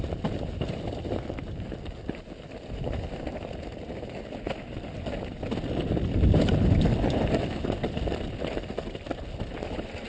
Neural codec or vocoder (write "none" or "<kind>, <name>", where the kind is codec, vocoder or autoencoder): none